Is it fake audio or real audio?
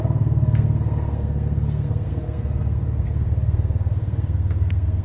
fake